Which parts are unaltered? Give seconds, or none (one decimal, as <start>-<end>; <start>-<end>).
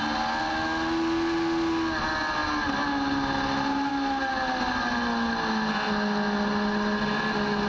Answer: 0.0-7.7